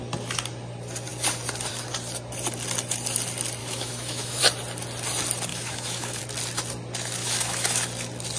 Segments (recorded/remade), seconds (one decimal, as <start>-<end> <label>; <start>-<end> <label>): 0.0-3.6 recorded; 3.6-4.4 remade; 4.4-5.5 recorded; 5.5-6.2 remade; 6.2-7.2 recorded; 7.2-7.8 remade; 7.8-8.4 recorded